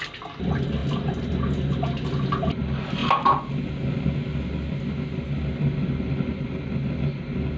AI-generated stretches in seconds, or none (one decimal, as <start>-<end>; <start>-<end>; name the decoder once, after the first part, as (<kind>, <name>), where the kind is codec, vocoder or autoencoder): none